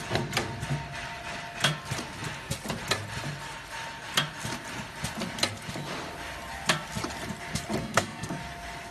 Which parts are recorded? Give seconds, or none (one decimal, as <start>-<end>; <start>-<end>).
0.0-7.8; 8.4-8.9